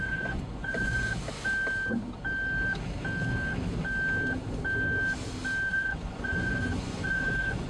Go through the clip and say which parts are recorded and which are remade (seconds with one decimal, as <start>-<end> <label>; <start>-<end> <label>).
0.0-1.1 remade; 1.1-5.7 recorded; 5.7-7.7 remade